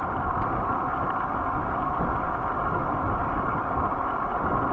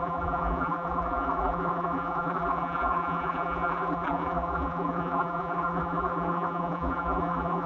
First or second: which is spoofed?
second